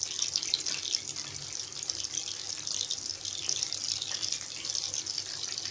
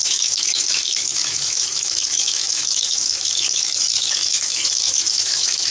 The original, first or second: first